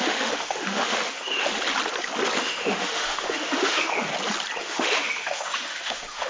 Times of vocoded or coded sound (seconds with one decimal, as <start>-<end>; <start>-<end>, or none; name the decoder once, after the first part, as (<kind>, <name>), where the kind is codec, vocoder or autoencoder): 0.0-1.5 (autoencoder, DAC-VAE); 2.4-4.1; 4.6-6.3